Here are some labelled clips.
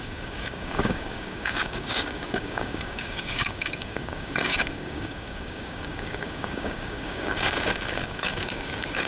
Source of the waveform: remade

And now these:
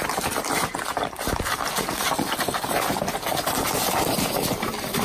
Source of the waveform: remade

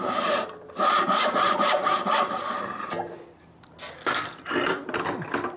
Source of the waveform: remade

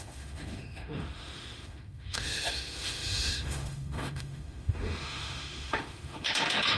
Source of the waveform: remade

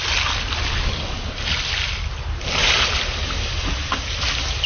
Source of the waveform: recorded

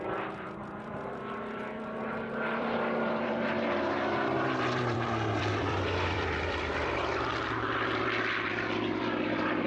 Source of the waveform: remade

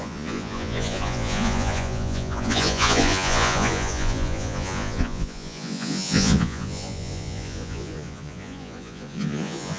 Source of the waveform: remade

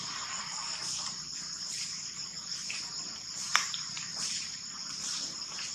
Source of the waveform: remade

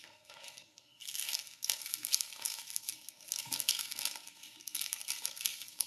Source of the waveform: remade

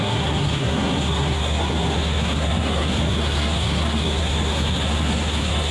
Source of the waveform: remade